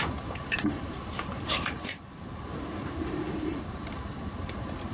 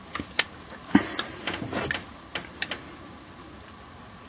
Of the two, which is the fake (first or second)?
first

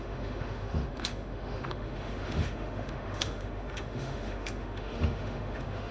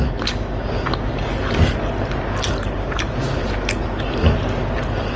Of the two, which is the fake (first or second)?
first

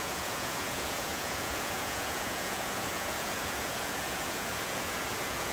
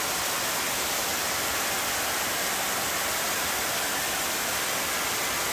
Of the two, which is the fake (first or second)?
first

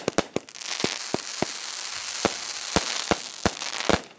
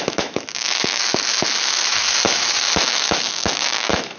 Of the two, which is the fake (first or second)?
second